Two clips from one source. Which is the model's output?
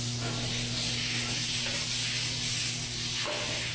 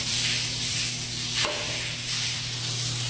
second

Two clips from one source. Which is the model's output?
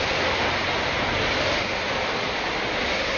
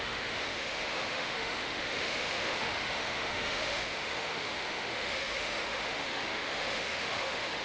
second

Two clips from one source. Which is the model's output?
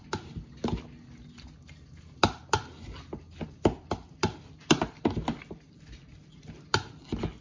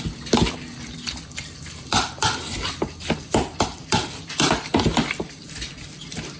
second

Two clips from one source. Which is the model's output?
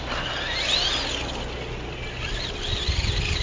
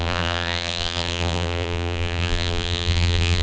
second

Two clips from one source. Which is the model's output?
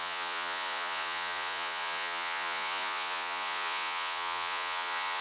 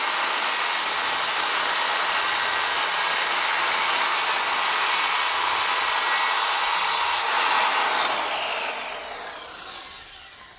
first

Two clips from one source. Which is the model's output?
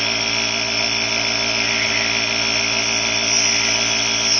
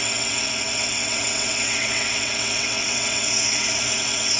second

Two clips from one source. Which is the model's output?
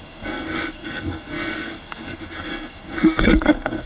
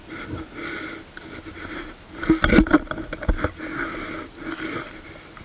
first